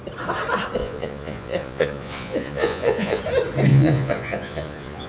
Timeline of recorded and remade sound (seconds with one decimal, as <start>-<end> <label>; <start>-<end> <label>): 0.0-0.8 recorded; 0.8-3.2 remade; 3.2-3.7 recorded; 3.7-5.1 remade